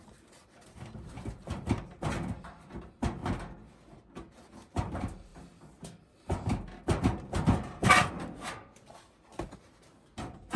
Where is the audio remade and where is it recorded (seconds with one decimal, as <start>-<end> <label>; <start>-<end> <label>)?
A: 0.0-10.6 recorded